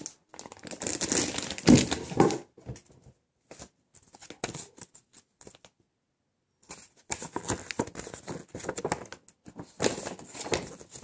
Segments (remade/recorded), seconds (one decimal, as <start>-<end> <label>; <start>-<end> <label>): 0.0-11.0 recorded